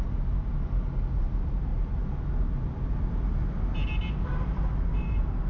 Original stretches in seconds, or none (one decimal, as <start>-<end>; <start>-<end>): 0.0-5.5